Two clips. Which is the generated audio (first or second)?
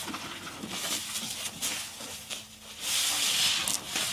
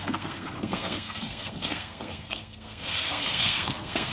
second